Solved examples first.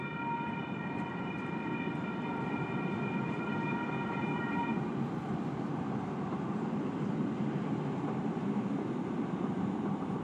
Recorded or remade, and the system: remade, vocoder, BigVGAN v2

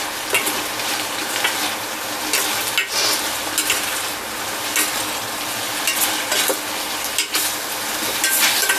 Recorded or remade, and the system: recorded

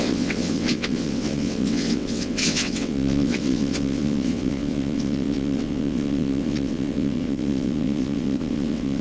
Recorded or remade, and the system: remade, vocoder, WaveNeXt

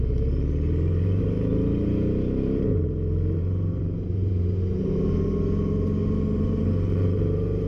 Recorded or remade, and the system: remade, vocoder, BigVGAN v2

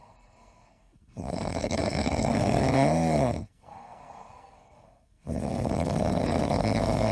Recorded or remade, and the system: remade, codec, SNAC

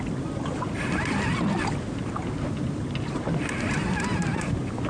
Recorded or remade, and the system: recorded